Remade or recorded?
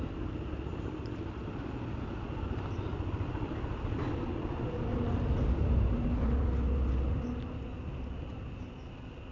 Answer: recorded